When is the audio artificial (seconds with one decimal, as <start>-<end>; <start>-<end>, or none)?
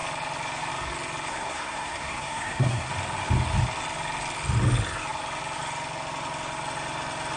1.3-2.9